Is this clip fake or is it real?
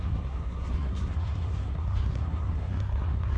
fake